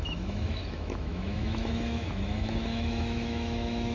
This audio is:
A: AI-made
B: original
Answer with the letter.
A